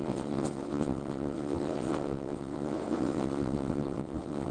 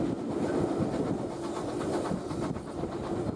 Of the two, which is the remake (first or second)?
first